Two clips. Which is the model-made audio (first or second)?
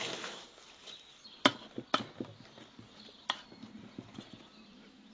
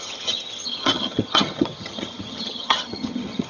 second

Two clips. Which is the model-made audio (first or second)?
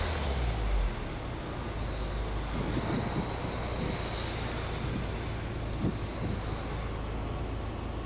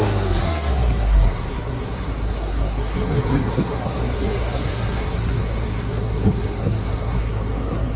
second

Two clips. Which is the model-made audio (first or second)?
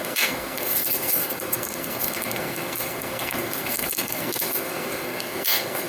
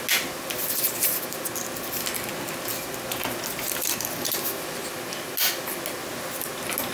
first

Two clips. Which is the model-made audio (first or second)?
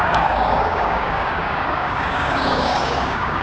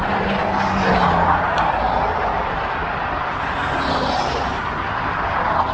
first